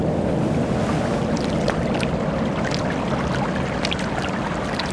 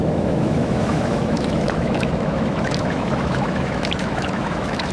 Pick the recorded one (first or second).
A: first